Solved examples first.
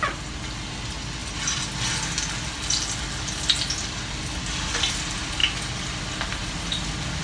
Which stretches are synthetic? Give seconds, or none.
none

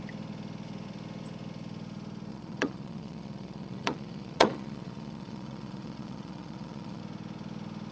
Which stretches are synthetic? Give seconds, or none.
2.3-7.0 (vocoder, Vocos)

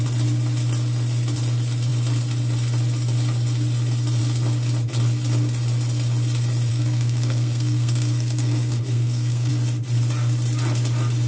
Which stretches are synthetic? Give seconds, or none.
6.7-9.5 (codec, SNAC)

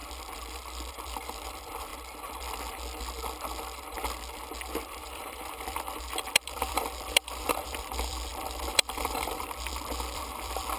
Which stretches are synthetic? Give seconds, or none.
0.9-1.9 (vocoder, BigVGAN v2); 4.6-10.8

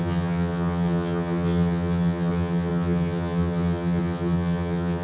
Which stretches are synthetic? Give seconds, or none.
0.0-5.0 (vocoder, HiFi-GAN)

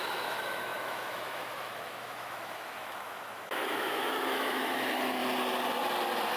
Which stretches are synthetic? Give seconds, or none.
0.0-5.2 (autoencoder, DAC-VAE)